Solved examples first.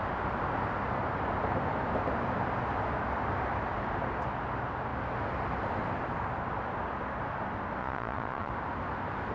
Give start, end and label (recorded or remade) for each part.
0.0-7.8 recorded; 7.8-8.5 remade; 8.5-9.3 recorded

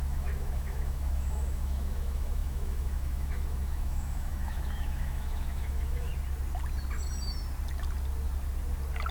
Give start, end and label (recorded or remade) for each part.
0.0-6.1 remade; 6.1-9.1 recorded

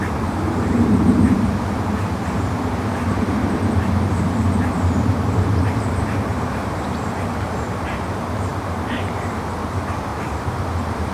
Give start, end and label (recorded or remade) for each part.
0.0-3.4 remade; 3.4-4.7 recorded; 4.7-11.1 remade